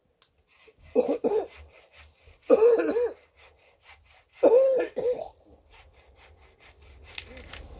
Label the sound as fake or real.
real